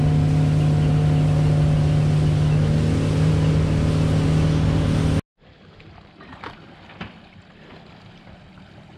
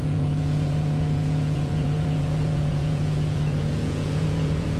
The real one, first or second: first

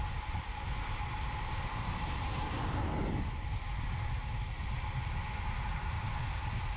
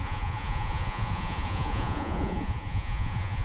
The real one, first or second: first